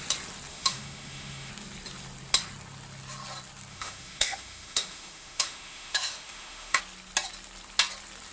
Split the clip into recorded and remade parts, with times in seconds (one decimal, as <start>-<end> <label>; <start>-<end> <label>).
0.0-0.5 recorded; 0.5-1.5 remade; 1.5-3.7 recorded; 3.7-6.8 remade; 6.8-8.3 recorded